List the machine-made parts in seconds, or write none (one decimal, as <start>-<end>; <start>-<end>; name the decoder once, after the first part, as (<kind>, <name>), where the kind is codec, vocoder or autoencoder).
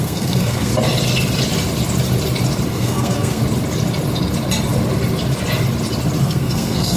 0.0-0.7 (codec, SNAC); 2.7-3.4; 6.2-7.0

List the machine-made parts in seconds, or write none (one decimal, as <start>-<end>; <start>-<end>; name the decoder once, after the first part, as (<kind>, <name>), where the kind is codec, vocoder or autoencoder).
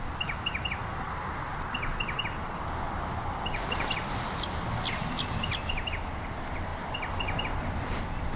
none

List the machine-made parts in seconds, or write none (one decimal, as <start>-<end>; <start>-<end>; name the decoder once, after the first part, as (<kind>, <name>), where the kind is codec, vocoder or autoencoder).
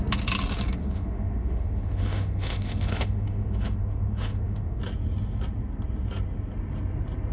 0.8-4.8 (autoencoder, DAC-VAE)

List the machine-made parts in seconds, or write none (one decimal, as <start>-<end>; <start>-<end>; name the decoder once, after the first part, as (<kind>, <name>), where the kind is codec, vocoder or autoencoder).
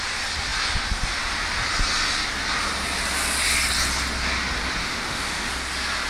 4.8-5.5 (autoencoder, DAC-VAE)